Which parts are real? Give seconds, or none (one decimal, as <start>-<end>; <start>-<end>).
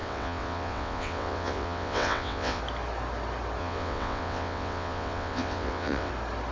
2.6-3.6; 6.1-6.5